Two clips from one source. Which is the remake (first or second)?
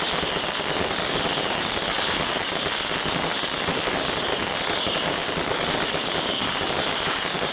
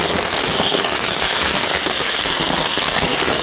second